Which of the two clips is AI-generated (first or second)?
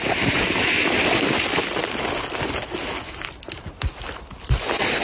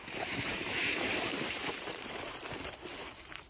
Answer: second